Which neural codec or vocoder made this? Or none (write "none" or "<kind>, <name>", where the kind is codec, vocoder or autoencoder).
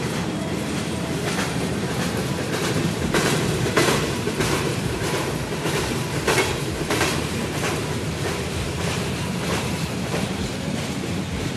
vocoder, BigVGAN v2